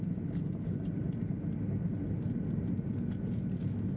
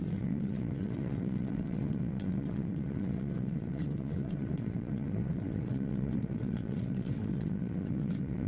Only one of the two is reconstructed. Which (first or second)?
second